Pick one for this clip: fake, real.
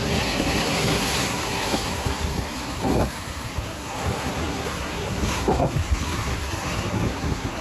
fake